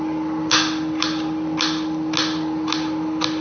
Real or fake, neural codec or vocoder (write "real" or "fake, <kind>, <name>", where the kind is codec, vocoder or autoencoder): real